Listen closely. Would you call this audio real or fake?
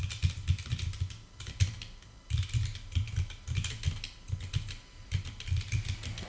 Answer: real